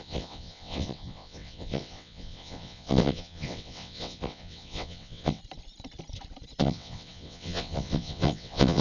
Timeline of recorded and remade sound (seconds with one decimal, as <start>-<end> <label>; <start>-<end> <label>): 0.0-5.4 remade; 5.4-6.6 recorded; 6.6-8.8 remade